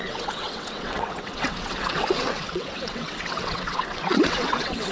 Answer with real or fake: fake